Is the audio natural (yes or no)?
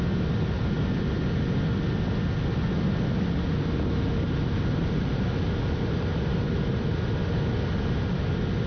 yes